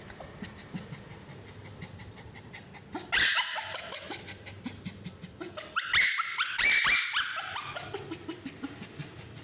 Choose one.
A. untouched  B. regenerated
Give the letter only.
A